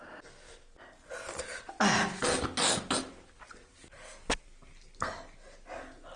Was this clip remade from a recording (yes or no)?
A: no